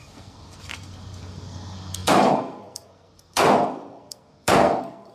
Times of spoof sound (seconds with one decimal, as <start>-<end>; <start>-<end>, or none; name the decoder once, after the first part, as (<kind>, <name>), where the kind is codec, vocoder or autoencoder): 0.0-5.1 (codec, SNAC)